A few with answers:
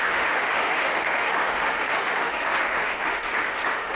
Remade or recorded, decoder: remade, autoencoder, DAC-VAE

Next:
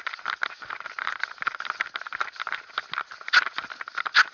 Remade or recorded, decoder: recorded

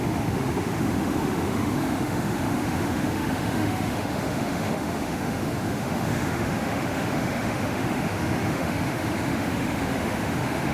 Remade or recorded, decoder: remade, autoencoder, DAC-VAE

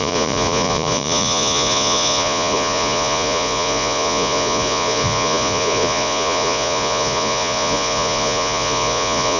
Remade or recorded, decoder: remade, vocoder, Vocos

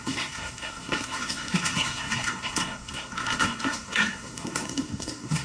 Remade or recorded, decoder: remade, codec, SNAC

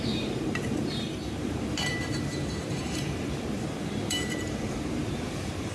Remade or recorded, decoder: remade, vocoder, BigVGAN v2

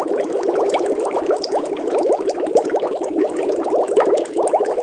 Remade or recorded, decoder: remade, autoencoder, DAC-VAE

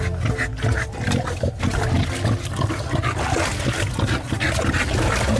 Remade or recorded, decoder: recorded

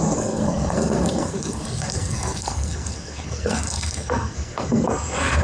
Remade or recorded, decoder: remade, codec, SNAC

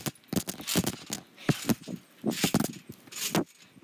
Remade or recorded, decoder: recorded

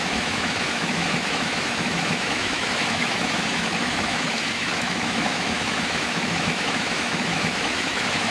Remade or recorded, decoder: remade, autoencoder, DAC-VAE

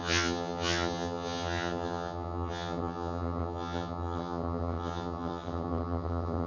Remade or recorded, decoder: remade, vocoder, HiFi-GAN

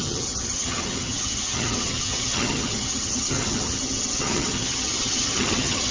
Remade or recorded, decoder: remade, vocoder, HiFi-GAN